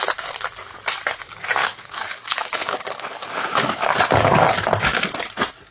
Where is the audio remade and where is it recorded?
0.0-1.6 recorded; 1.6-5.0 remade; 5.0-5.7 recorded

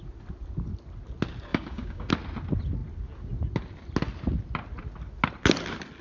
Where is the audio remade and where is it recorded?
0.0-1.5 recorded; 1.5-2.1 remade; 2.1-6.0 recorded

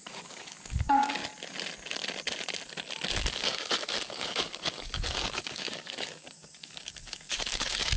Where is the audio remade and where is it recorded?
0.0-1.2 remade; 1.2-3.1 recorded; 3.1-8.0 remade

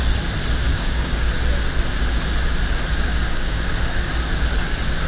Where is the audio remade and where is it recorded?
0.0-0.7 recorded; 0.7-1.3 remade; 1.3-3.1 recorded; 3.1-3.6 remade; 3.6-5.1 recorded